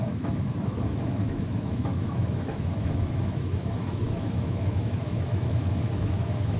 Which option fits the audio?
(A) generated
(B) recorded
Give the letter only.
A